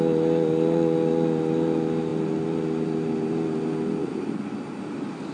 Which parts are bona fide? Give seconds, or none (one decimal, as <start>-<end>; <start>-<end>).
0.0-5.3